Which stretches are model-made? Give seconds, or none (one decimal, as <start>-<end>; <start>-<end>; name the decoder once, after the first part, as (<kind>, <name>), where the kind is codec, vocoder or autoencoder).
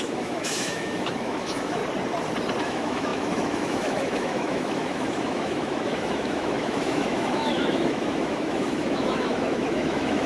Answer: 0.0-1.8 (autoencoder, DAC-VAE); 2.6-10.3